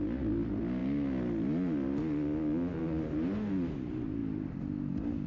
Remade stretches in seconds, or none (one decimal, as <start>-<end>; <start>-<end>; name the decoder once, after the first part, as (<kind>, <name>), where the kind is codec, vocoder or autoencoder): none